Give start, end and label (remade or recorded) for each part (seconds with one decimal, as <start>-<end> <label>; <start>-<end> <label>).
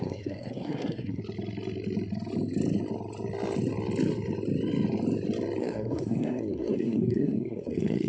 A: 0.0-1.2 remade; 1.2-5.6 recorded; 5.6-8.1 remade